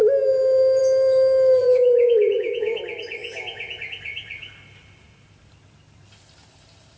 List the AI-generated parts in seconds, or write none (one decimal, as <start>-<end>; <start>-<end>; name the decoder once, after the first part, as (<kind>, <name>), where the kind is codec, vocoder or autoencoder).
1.6-2.8 (vocoder, Vocos); 3.2-3.8